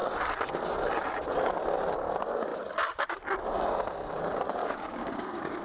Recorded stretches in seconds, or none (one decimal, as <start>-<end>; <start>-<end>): 0.0-4.6